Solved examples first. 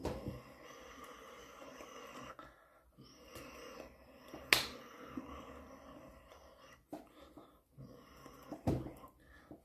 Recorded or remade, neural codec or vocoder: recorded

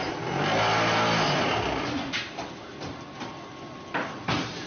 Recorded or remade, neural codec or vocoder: recorded